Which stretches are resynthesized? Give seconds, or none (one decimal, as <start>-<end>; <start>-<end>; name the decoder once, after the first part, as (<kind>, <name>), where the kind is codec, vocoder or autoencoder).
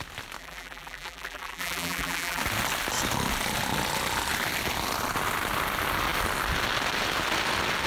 0.4-2.4 (vocoder, BigVGAN v2)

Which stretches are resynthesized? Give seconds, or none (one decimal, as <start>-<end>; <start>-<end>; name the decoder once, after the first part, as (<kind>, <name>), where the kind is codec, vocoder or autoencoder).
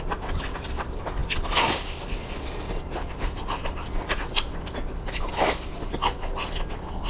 none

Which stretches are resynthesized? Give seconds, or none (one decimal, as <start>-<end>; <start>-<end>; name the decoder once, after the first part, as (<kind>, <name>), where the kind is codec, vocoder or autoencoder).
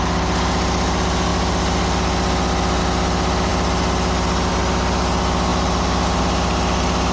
none